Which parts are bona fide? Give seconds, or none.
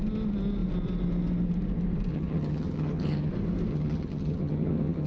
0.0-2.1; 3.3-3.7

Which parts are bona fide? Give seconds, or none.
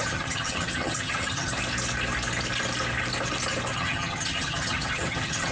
1.6-3.7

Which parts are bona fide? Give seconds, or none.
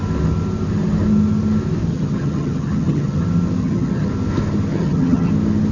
0.0-1.9; 3.2-3.6; 4.1-4.7; 5.3-5.7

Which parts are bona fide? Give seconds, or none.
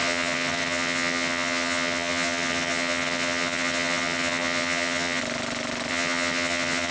5.2-5.9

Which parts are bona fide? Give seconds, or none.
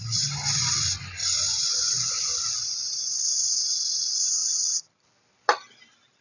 0.0-6.2